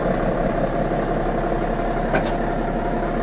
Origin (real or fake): real